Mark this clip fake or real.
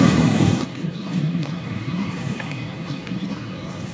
fake